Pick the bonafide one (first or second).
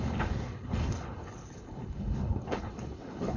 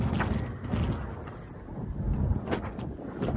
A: second